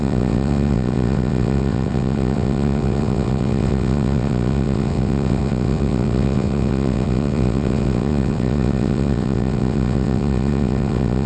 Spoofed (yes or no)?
yes